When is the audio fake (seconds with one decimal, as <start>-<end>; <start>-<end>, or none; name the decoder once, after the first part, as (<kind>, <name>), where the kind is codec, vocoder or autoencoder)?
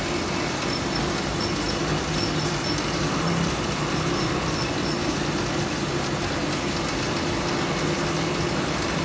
none